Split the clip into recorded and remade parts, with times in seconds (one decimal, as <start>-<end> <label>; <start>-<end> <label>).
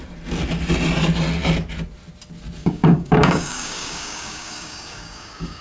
0.0-2.6 recorded; 2.6-5.6 remade